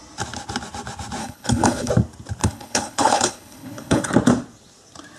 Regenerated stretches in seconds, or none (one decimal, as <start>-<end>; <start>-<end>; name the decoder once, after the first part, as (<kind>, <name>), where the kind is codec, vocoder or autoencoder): 1.2-1.9 (codec, HILCodec); 2.4-4.1